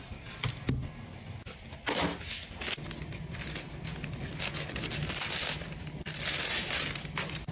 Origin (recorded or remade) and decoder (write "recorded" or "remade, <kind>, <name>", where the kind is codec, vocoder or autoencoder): recorded